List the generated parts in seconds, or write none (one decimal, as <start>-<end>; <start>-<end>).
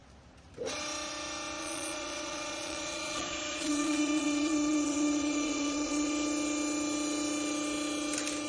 1.6-6.1